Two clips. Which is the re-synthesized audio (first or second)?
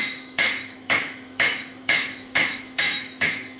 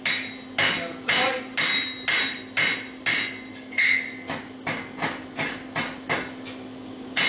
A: first